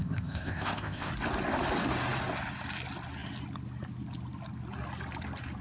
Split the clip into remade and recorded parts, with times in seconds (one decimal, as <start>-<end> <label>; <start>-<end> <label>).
0.0-1.1 remade; 1.1-5.6 recorded